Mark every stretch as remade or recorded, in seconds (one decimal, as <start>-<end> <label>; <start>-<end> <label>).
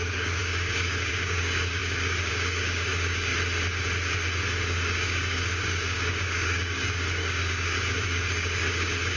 0.0-3.3 remade; 3.3-4.4 recorded; 4.4-9.2 remade